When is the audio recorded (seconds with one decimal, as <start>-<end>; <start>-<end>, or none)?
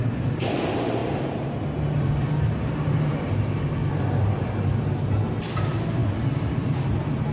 3.8-5.6